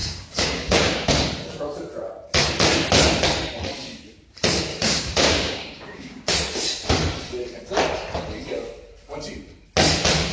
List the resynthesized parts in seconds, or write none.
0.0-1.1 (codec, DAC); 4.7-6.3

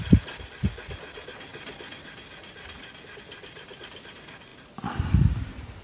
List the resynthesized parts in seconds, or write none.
none